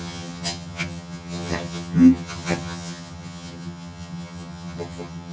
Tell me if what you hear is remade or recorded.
remade